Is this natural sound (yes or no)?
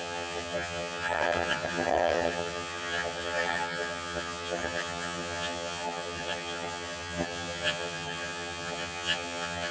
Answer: no